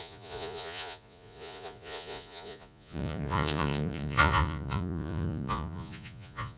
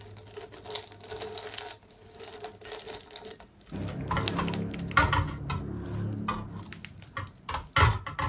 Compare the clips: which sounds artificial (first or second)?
first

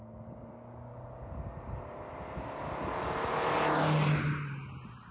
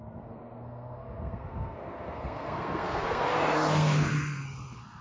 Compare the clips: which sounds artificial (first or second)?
second